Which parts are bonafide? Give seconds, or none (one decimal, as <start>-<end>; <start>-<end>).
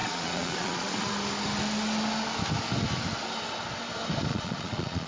1.1-4.3